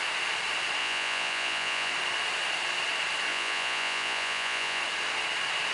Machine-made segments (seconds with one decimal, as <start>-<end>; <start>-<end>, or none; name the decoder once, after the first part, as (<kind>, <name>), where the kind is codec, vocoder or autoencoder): 0.8-1.9 (vocoder, Vocos); 3.3-4.8